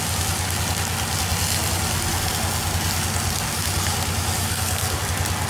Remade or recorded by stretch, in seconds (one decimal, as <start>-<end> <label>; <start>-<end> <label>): 0.0-4.4 recorded; 4.4-5.0 remade; 5.0-5.5 recorded